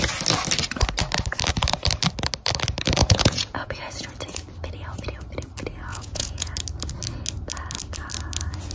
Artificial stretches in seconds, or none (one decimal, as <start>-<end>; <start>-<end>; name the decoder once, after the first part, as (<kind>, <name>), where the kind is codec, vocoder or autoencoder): 3.0-4.1 (vocoder, Vocos); 5.9-6.5